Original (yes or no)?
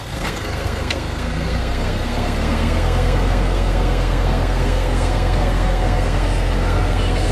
no